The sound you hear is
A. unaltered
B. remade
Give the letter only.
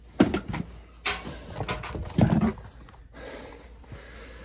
A